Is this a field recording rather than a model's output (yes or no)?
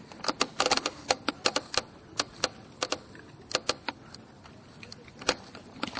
no